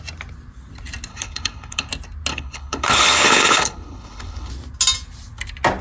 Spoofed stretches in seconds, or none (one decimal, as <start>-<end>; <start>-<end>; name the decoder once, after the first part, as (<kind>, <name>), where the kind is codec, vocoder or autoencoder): 1.1-1.9 (codec, HILCodec); 2.3-4.5